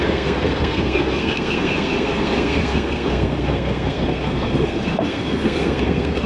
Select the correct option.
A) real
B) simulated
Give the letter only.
B